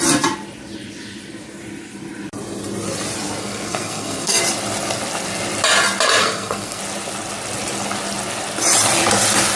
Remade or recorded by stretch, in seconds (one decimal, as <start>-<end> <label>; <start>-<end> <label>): 0.0-3.4 recorded; 3.4-4.4 remade; 4.4-6.2 recorded; 6.2-6.8 remade; 6.8-9.6 recorded

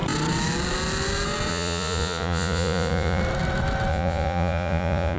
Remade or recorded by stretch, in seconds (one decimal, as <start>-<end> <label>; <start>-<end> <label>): 0.0-1.5 recorded; 1.5-3.2 remade; 3.2-3.9 recorded; 3.9-5.2 remade

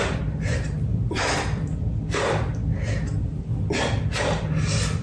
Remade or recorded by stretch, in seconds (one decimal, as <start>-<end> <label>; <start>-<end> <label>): 0.0-5.0 recorded

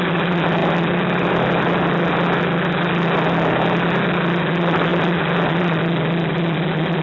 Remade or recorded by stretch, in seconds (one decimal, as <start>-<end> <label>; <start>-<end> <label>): 0.0-7.0 recorded

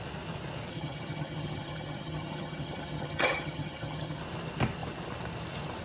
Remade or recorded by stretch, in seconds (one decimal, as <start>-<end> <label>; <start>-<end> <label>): 0.0-0.7 recorded; 0.7-4.2 remade; 4.2-5.8 recorded